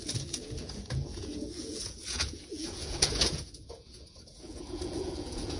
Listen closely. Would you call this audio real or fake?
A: fake